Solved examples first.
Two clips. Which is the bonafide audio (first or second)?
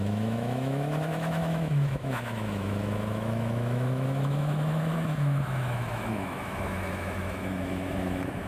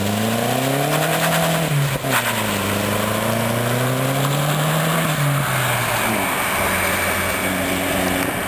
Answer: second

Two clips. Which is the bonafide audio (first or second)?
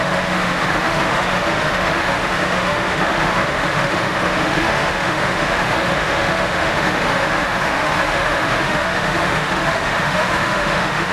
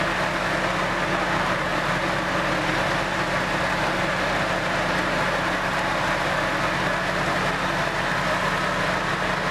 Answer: second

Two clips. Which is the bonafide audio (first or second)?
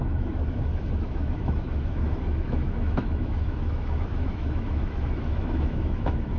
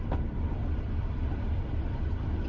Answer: second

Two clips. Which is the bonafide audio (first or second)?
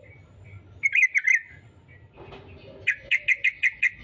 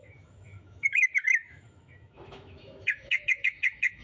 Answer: first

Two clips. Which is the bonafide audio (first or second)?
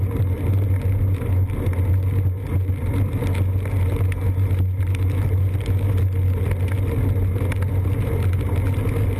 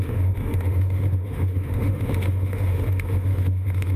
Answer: first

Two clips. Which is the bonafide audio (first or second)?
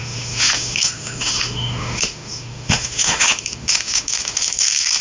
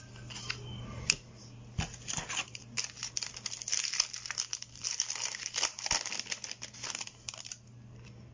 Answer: second